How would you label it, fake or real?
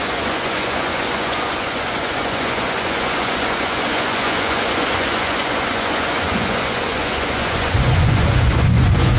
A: fake